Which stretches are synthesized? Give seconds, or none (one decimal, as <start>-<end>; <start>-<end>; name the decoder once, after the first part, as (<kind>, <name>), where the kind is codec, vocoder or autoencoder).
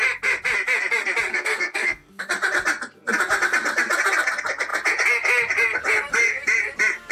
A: 1.3-2.3 (codec, SNAC)